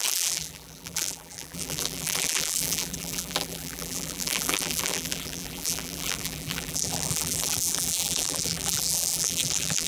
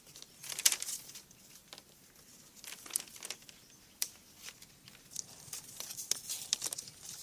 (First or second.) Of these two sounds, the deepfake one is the first